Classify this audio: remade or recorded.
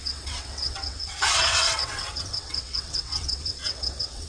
remade